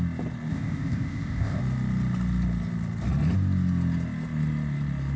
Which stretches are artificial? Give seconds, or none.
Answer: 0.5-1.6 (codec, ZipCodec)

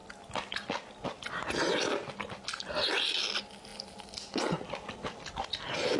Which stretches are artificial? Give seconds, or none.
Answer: none